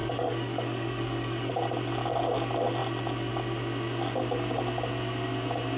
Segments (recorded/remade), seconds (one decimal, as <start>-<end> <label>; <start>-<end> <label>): 0.0-1.5 remade; 1.5-5.8 recorded